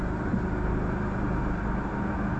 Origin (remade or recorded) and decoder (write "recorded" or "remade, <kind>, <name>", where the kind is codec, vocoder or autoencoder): recorded